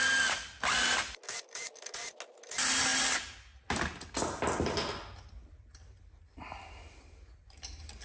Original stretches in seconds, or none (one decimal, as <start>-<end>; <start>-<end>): 0.0-8.0